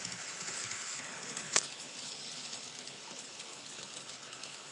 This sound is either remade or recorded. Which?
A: remade